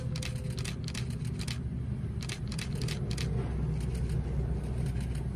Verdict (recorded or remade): recorded